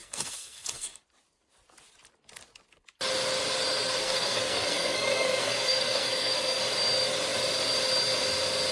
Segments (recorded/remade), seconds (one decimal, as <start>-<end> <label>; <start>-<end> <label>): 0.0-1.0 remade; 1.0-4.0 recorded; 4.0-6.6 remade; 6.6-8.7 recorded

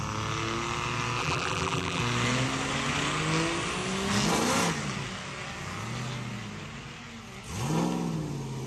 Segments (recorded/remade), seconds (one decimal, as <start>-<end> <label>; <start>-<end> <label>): 0.0-1.2 recorded; 1.2-2.0 remade; 2.0-8.7 recorded

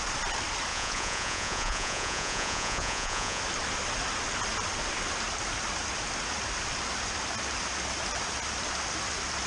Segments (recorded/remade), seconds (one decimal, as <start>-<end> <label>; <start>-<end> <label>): 0.0-0.7 recorded; 0.7-3.4 remade; 3.4-9.5 recorded

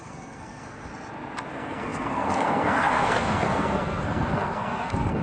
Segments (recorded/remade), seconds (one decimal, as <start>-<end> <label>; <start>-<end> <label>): 0.0-0.9 remade; 0.9-1.5 recorded; 1.5-5.2 remade

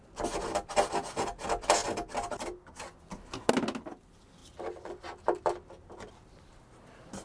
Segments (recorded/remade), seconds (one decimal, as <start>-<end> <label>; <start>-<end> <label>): 0.0-7.2 recorded

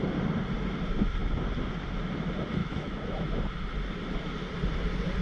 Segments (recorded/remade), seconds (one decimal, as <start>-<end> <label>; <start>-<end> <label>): 0.0-2.6 recorded; 2.6-3.4 remade; 3.4-5.2 recorded

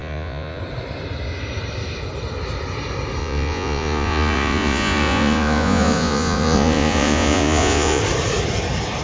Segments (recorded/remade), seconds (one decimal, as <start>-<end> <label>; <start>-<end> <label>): 0.0-0.6 remade; 0.6-3.2 recorded; 3.2-8.0 remade; 8.0-9.0 recorded